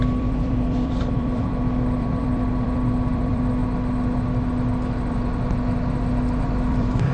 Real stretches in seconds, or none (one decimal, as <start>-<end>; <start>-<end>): 3.6-6.4